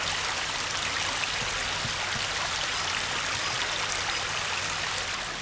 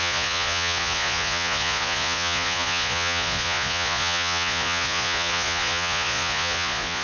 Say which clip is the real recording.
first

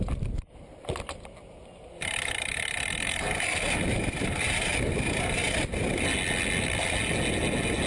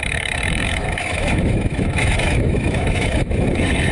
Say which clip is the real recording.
first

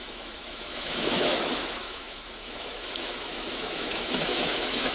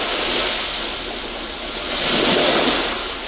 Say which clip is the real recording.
second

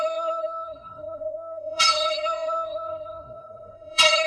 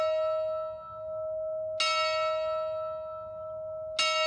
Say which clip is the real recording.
second